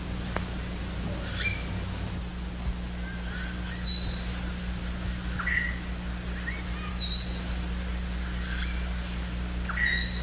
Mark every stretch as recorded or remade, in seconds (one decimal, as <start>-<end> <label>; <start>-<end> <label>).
0.0-10.2 recorded